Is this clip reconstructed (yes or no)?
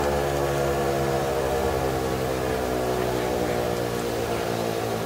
no